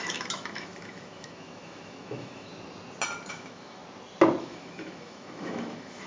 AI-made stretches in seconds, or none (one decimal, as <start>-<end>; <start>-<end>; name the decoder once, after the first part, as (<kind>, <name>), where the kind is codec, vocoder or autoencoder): 0.0-2.5 (autoencoder, DAC-VAE); 3.3-3.8; 4.4-6.1